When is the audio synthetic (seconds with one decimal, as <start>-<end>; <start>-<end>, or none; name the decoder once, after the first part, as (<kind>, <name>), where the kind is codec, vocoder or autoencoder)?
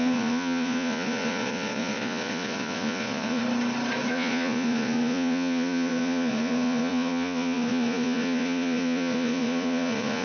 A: 0.0-3.4 (vocoder, Vocos); 4.1-10.2